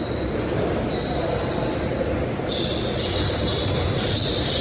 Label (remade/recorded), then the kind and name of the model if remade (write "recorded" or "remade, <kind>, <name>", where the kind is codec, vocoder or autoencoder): recorded